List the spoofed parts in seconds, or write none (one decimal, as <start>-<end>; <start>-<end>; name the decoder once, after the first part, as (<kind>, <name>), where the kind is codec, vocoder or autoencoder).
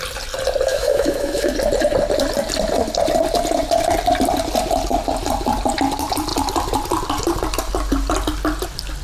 0.7-1.5 (autoencoder, DAC-VAE)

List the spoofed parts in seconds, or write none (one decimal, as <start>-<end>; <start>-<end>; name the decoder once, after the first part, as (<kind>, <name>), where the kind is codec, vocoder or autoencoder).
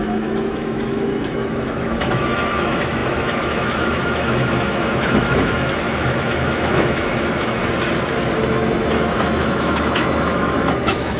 0.0-7.6 (autoencoder, DAC-VAE); 8.4-11.2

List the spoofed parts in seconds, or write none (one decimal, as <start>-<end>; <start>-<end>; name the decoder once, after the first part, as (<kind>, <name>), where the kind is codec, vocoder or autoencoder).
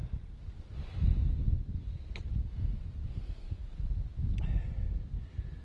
none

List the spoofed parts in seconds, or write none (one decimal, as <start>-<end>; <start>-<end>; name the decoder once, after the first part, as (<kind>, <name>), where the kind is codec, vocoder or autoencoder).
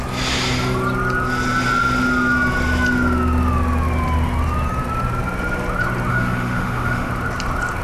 6.1-7.1 (autoencoder, DAC-VAE)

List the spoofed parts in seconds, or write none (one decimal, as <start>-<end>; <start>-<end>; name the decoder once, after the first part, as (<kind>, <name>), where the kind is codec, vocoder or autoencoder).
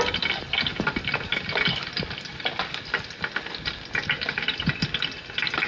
none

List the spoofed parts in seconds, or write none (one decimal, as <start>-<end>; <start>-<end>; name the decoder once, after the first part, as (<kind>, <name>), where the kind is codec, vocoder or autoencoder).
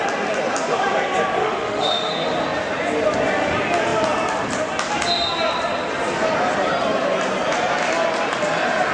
1.4-2.1 (autoencoder, DAC-VAE)